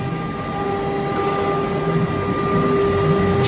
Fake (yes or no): no